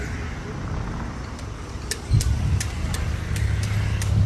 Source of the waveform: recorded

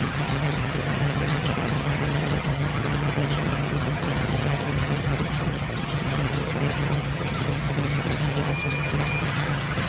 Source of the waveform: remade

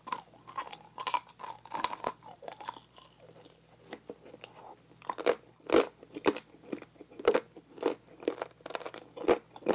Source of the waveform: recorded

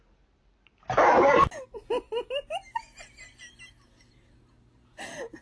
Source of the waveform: recorded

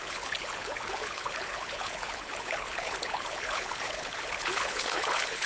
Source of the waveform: remade